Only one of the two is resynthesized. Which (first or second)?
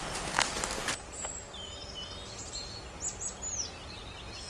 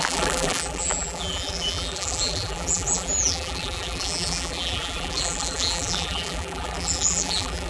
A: second